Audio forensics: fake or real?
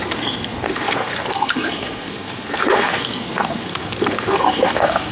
fake